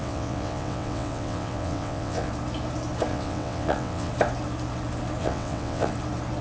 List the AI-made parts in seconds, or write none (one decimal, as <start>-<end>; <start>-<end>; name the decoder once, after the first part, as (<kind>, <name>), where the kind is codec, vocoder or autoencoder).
0.0-2.3 (vocoder, WaveNeXt); 3.1-4.1; 5.2-5.9